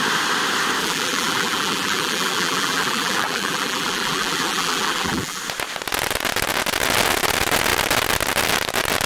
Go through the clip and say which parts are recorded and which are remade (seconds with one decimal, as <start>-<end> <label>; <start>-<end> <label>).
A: 0.0-0.8 recorded; 0.8-5.4 remade; 5.4-9.1 recorded